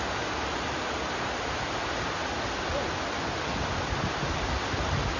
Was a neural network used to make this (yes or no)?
no